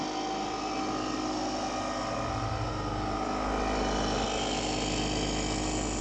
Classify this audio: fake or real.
real